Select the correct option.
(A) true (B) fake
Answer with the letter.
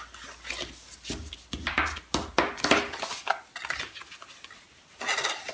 A